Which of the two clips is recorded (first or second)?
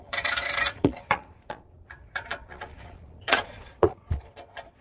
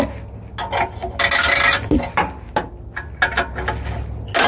second